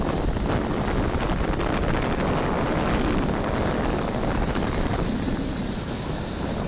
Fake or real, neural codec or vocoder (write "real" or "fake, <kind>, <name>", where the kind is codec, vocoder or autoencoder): real